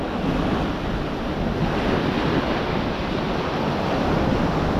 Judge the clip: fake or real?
real